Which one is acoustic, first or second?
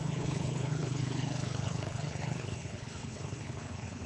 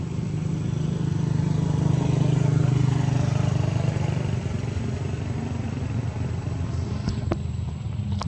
second